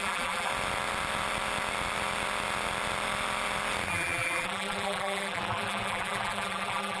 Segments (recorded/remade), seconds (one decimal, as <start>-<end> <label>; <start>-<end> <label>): 0.0-0.5 remade; 0.5-3.9 recorded; 3.9-7.0 remade